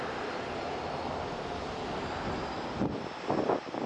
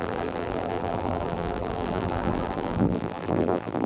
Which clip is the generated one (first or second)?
second